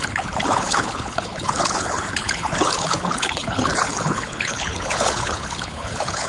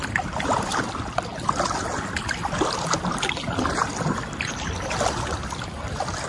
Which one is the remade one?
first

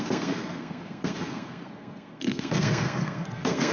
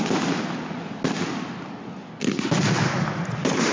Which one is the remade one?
first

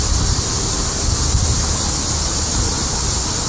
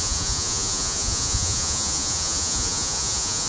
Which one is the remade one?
second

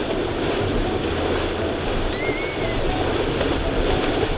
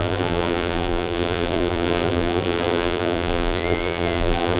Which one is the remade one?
second